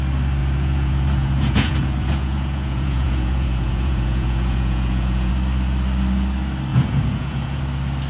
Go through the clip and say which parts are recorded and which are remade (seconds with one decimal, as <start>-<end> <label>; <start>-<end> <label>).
0.0-0.4 recorded; 0.4-5.3 remade; 5.3-6.7 recorded; 6.7-7.6 remade; 7.6-8.1 recorded

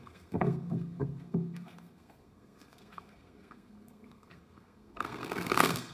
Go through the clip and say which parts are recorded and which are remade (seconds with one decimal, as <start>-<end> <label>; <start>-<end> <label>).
0.0-5.9 remade

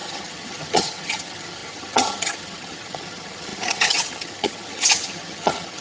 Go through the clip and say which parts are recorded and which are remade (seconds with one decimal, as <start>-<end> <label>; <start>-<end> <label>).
0.0-5.8 remade